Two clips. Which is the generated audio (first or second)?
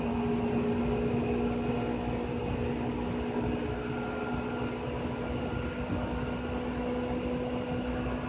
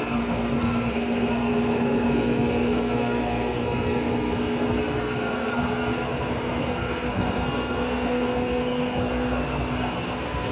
second